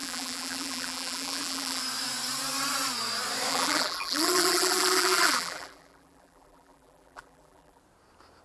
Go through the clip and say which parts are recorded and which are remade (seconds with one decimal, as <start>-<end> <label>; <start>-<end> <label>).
0.0-1.8 remade; 1.8-3.5 recorded; 3.5-7.8 remade; 7.8-8.4 recorded